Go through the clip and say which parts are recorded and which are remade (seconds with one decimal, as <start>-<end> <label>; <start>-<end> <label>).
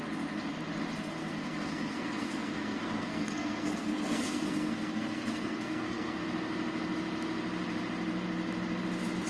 0.0-1.2 recorded; 1.2-6.2 remade; 6.2-9.3 recorded